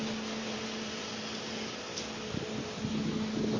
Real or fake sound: real